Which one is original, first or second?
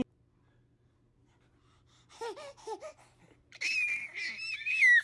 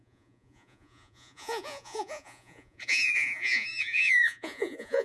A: first